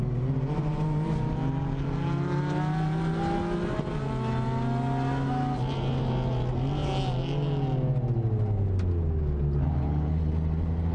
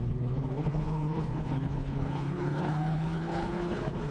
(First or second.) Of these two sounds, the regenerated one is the second